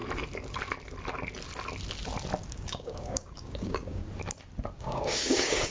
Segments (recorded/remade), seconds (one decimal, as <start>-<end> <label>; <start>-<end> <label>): 0.0-2.5 recorded; 2.5-4.0 remade; 4.0-4.8 recorded; 4.8-5.7 remade